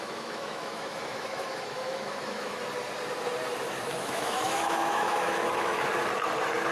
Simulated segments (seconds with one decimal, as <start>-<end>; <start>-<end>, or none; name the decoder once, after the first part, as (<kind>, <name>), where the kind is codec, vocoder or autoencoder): 0.0-2.6 (autoencoder, DAC-VAE); 3.8-5.9